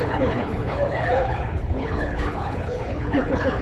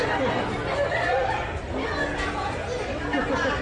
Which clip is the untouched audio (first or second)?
second